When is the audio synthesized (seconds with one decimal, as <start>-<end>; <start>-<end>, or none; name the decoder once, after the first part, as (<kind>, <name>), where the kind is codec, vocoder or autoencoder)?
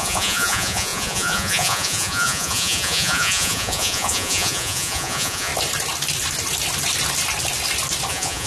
0.0-5.5 (vocoder, Vocos); 8.1-8.5